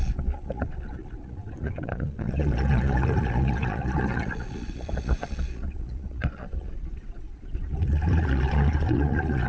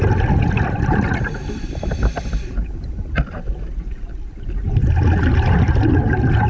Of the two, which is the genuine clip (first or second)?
second